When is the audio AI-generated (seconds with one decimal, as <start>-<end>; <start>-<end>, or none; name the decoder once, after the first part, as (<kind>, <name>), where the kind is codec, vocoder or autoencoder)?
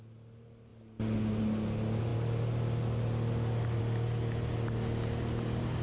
none